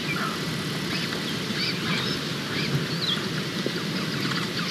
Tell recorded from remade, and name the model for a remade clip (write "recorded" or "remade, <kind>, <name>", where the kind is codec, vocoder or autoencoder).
recorded